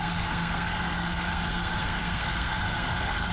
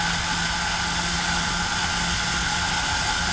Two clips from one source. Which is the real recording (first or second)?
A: second